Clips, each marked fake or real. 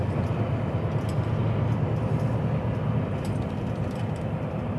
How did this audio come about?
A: real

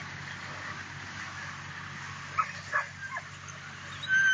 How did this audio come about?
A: real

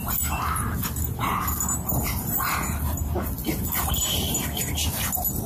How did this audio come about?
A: real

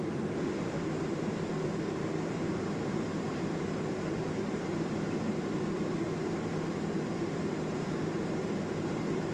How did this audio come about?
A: fake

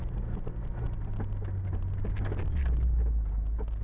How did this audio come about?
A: real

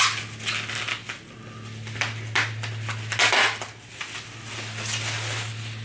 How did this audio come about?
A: real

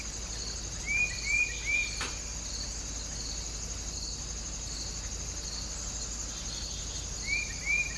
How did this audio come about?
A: real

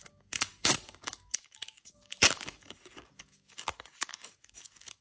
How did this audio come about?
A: fake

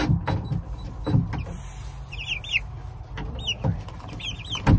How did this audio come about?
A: real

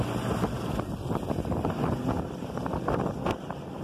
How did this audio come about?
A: real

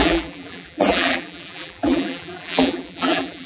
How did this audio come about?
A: fake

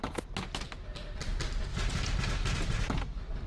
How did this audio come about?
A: real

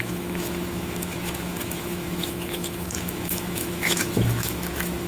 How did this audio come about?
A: fake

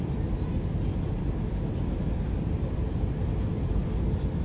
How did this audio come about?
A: real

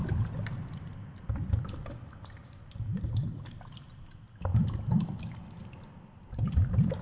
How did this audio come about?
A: real